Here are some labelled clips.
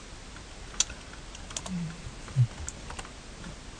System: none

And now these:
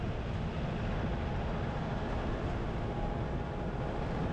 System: none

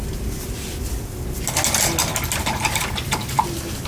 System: none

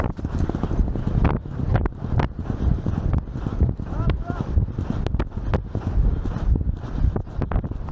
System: none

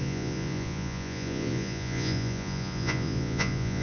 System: vocoder, Vocos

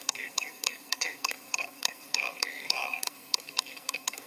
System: codec, SNAC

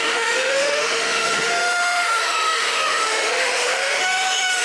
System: autoencoder, DAC-VAE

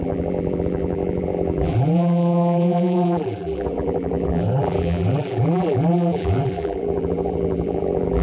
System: vocoder, BigVGAN v2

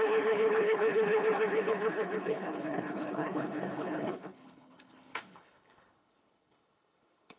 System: codec, HILCodec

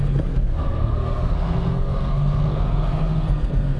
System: codec, SNAC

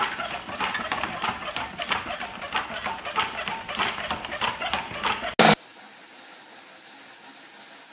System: none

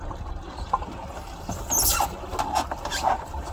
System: none